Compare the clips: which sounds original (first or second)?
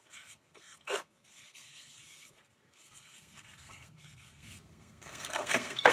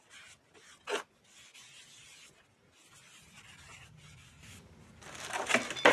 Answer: second